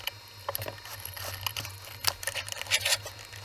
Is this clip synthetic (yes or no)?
no